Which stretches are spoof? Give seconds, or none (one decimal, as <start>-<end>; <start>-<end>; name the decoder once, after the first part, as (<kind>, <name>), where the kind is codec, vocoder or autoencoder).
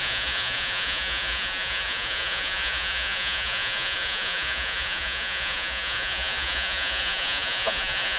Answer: 0.0-8.2 (vocoder, Vocos)